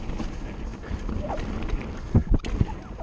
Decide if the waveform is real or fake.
real